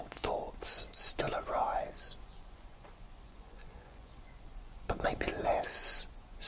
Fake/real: fake